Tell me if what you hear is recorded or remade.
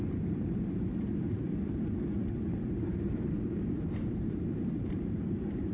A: remade